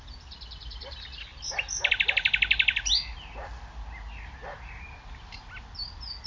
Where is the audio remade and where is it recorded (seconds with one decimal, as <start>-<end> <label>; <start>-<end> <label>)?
0.0-6.3 recorded